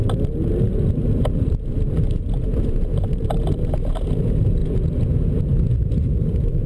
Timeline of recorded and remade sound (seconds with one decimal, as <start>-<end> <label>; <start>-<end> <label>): 0.0-4.6 remade; 4.6-5.4 recorded; 5.4-6.7 remade

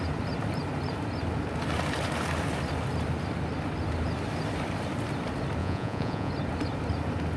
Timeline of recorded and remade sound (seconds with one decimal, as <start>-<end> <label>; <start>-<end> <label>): 0.0-5.6 recorded; 5.6-6.3 remade; 6.3-7.4 recorded

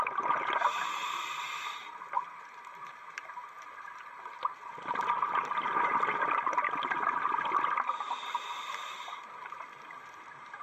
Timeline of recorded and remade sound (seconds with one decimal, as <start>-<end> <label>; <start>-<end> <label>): 0.0-1.8 recorded; 1.8-4.8 remade; 4.8-10.6 recorded

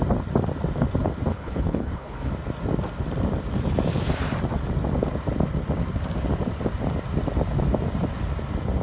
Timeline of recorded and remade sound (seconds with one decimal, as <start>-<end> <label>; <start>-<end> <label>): 0.0-1.3 recorded; 1.3-2.3 remade; 2.3-8.8 recorded